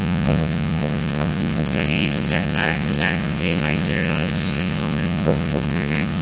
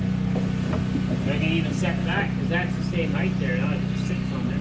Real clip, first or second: second